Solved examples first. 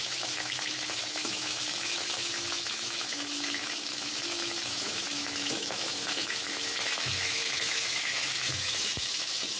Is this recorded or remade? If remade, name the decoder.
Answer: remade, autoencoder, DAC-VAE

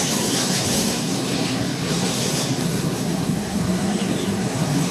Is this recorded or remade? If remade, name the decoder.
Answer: remade, codec, SNAC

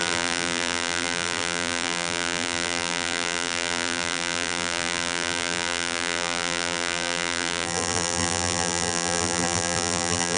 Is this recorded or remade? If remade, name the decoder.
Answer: remade, vocoder, BigVGAN v2